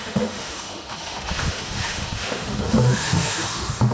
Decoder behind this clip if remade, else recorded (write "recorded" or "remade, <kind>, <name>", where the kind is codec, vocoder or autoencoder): remade, autoencoder, DAC-VAE